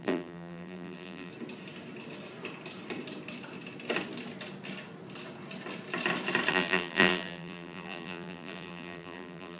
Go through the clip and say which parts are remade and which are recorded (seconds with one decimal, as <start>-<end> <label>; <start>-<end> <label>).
0.0-1.3 remade; 1.3-6.5 recorded; 6.5-9.6 remade